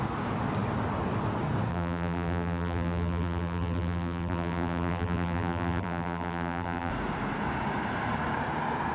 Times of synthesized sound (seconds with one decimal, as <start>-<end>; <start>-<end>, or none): 1.7-6.9